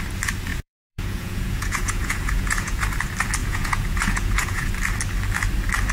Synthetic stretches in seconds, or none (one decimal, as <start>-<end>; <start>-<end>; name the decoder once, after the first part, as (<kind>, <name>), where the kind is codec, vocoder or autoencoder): 0.5-2.8 (vocoder, Vocos); 3.4-4.7